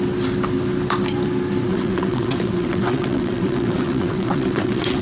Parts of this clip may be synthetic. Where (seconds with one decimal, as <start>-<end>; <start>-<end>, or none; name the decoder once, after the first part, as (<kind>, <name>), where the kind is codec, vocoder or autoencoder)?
1.7-5.0 (vocoder, WaveNeXt)